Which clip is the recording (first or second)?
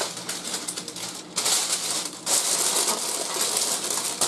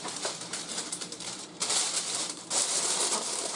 first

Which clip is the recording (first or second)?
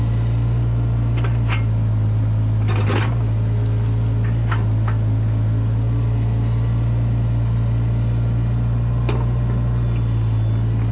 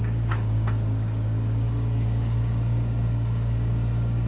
first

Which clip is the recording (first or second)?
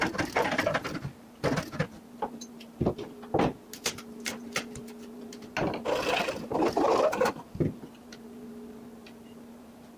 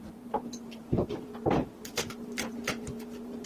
first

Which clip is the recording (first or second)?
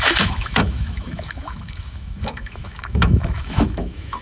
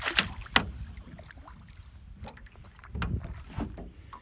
second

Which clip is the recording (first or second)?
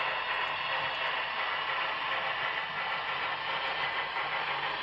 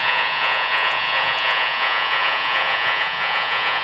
first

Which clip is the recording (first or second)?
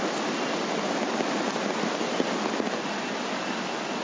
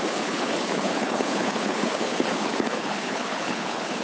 first